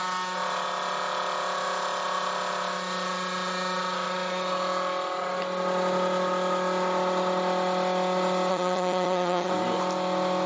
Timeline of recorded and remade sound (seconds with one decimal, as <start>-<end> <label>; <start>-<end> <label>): 0.0-8.5 recorded; 8.5-9.5 remade; 9.5-10.5 recorded